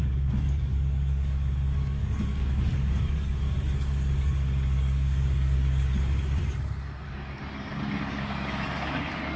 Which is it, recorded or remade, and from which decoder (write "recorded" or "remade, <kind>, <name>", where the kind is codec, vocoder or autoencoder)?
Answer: remade, codec, DAC